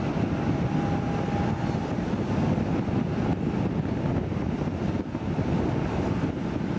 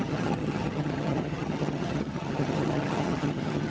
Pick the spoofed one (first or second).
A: second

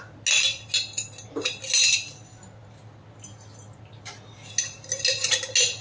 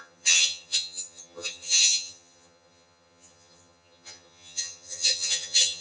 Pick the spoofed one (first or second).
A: second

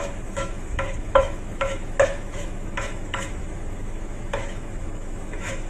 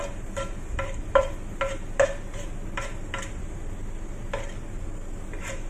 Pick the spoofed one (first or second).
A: first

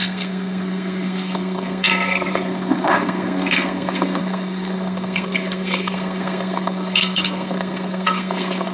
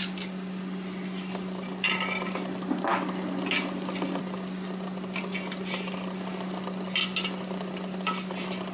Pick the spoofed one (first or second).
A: first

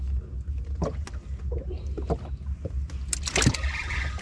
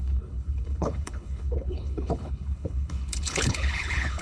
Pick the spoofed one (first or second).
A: second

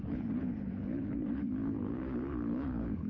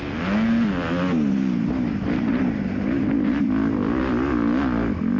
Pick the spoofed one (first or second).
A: first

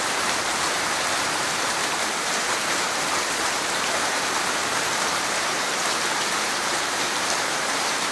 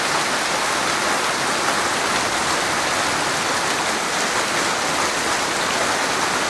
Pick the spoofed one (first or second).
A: first